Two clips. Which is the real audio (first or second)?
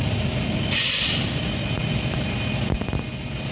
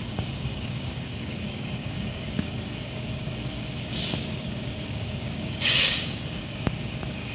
first